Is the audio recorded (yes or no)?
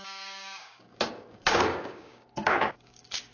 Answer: no